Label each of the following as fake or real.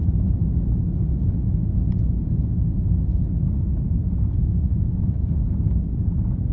real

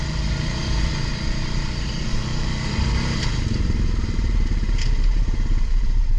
fake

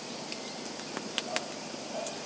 real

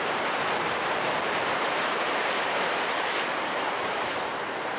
fake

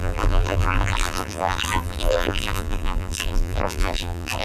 fake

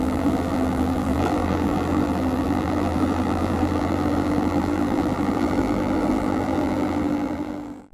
fake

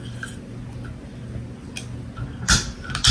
real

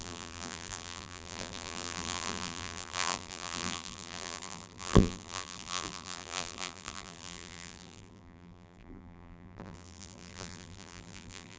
fake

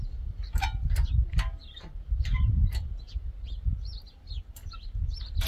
real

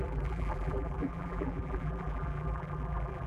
fake